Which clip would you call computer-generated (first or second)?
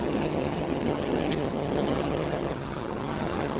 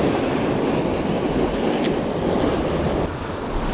first